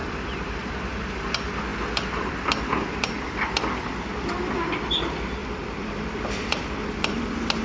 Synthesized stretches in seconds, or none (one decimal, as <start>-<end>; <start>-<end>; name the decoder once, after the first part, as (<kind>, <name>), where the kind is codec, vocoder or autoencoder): 0.0-0.7 (vocoder, BigVGAN v2); 1.7-3.9; 5.4-7.6